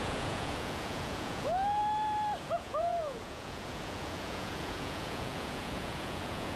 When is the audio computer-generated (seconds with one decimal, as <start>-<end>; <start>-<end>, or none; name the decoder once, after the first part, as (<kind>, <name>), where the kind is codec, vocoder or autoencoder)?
0.0-1.8 (vocoder, Vocos); 2.4-6.6